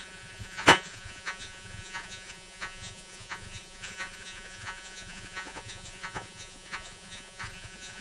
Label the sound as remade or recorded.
remade